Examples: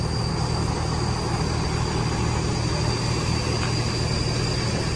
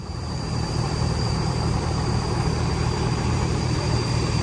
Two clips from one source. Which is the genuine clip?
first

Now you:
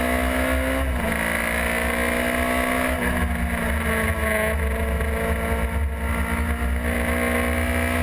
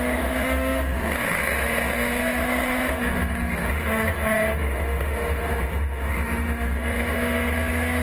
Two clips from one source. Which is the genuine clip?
first